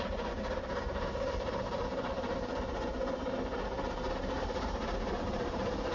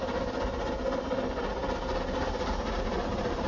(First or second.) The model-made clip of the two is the first